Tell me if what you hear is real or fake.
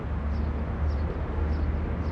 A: real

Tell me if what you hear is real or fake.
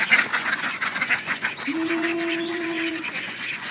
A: fake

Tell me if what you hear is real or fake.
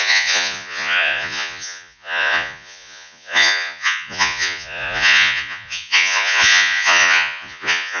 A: fake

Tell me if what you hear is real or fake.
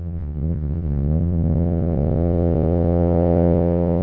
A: fake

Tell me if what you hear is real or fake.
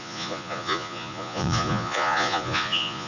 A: fake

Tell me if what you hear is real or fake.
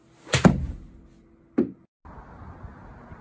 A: real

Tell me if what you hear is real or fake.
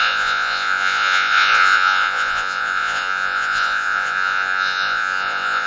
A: fake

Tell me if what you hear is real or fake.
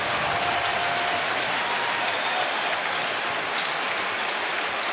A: real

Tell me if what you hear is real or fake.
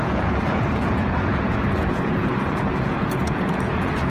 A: fake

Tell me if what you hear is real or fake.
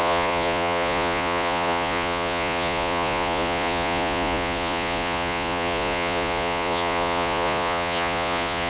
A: fake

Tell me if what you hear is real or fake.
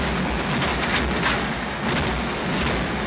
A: real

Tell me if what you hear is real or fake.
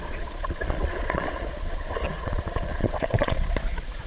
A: fake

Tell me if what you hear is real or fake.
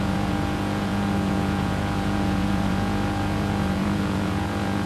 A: fake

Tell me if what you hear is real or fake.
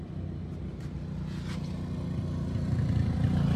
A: real